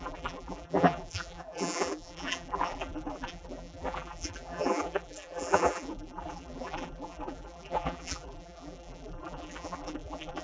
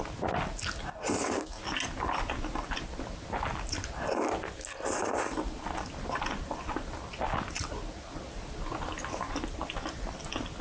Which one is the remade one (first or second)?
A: first